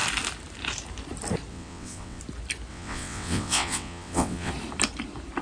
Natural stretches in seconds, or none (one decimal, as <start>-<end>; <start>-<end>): 0.0-1.5; 2.2-2.7; 4.5-5.4